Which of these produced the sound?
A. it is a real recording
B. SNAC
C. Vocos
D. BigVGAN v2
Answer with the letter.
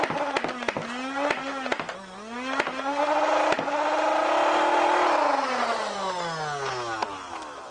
A